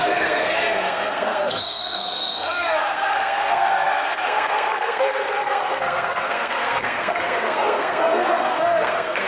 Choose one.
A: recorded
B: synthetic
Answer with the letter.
B